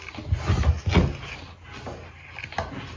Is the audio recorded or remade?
recorded